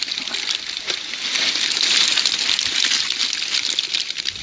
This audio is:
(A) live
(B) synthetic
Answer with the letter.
A